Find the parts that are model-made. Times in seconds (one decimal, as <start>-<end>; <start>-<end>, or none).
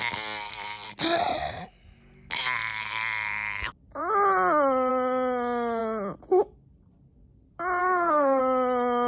7.8-8.4